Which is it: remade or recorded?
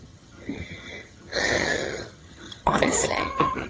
remade